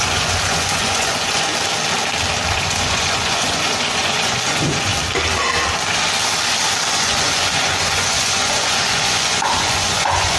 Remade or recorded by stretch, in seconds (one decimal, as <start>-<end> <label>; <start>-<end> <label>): 0.0-1.5 remade; 1.5-2.5 recorded; 2.5-4.9 remade; 4.9-6.9 recorded; 6.9-10.4 remade